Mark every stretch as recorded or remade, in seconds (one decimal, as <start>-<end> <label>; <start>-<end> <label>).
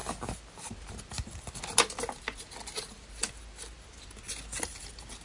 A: 0.0-1.6 remade; 1.6-5.2 recorded